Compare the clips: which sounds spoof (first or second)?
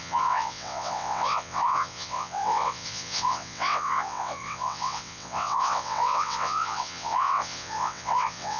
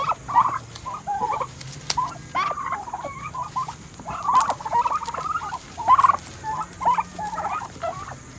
first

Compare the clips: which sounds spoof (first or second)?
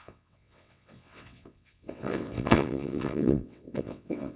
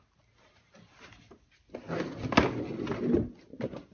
first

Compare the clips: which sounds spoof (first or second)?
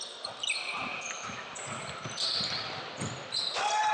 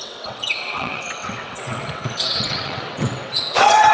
second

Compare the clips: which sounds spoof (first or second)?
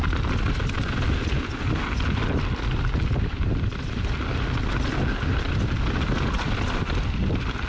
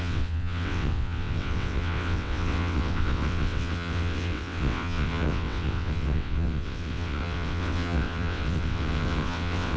second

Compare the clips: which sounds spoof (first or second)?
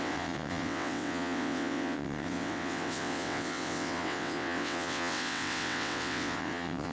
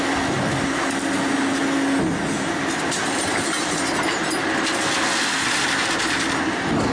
first